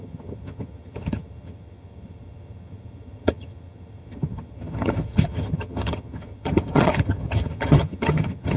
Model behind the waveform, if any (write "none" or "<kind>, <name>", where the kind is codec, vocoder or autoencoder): vocoder, HiFi-GAN